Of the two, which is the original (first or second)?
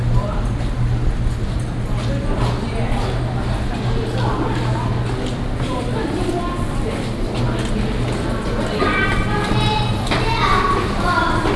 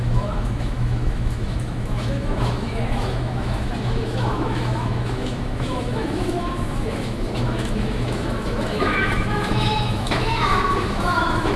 first